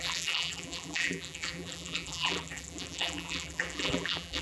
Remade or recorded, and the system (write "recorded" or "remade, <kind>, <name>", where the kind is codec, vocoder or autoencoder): remade, vocoder, BigVGAN v2